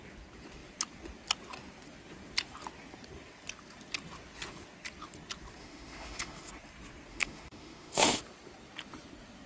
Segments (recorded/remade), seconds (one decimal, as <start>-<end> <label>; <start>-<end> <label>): 0.0-5.6 recorded; 5.6-6.5 remade; 6.5-7.1 recorded; 7.1-8.2 remade; 8.2-9.5 recorded